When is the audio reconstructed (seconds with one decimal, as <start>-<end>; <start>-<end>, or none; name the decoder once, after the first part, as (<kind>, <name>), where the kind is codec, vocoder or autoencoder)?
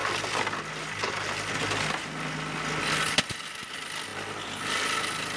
none